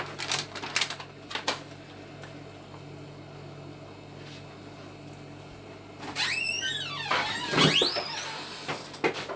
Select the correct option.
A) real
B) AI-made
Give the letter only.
A